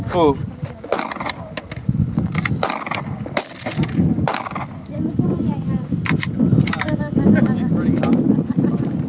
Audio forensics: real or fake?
real